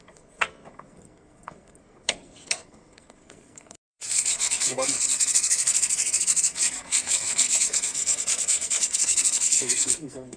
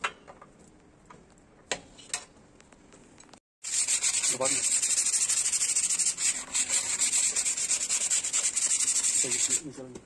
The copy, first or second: first